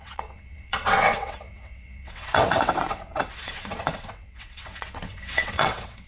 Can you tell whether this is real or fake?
fake